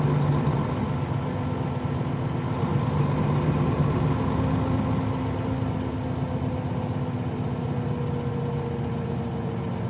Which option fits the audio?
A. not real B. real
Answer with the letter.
B